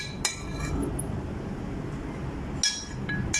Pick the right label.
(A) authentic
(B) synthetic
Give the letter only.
A